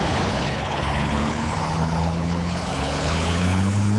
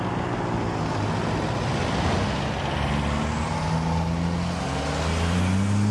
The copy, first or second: first